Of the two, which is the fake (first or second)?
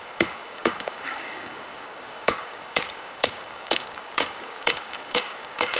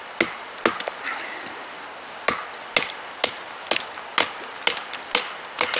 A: first